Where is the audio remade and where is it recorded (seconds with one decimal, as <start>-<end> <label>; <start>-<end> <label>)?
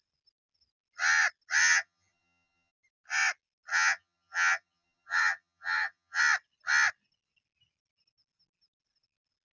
0.0-1.6 recorded; 1.6-2.7 remade; 2.7-3.7 recorded; 3.7-6.2 remade; 6.2-9.5 recorded